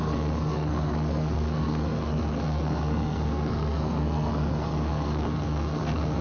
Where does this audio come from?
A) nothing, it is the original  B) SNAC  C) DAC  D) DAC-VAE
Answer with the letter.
B